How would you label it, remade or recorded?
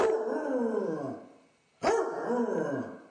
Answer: recorded